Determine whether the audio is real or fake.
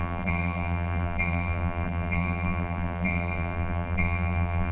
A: fake